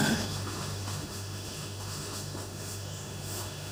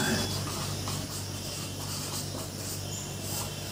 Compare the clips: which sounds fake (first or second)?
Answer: first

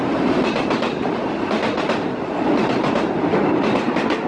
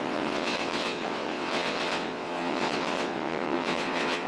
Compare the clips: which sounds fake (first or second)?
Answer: second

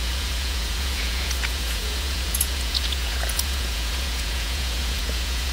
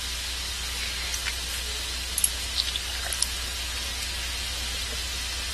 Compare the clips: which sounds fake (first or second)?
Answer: first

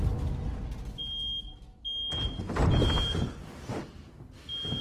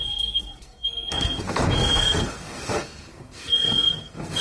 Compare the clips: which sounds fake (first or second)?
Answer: second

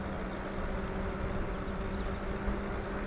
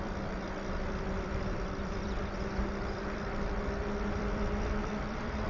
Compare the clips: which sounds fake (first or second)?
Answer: second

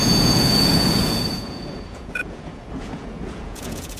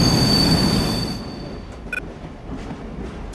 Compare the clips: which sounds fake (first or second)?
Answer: first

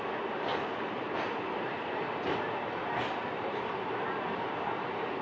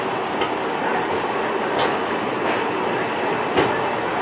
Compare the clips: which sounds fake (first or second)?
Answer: first